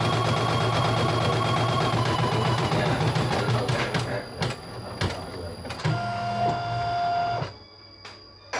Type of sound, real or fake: real